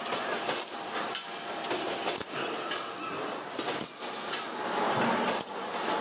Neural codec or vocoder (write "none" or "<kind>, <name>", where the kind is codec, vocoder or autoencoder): none